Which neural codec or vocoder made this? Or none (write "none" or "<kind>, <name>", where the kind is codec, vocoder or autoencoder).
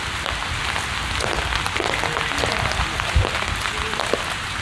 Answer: none